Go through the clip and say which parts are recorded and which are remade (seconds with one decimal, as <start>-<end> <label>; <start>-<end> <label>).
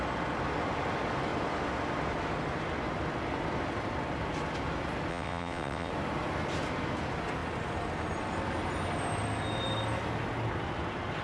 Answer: 0.0-5.1 recorded; 5.1-5.9 remade; 5.9-11.2 recorded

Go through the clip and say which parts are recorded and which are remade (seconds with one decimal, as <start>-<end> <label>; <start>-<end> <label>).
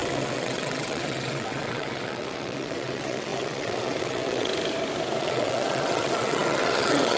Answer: 0.0-4.5 remade; 4.5-5.2 recorded; 5.2-7.2 remade